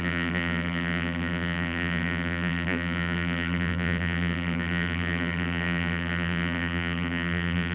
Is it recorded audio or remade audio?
remade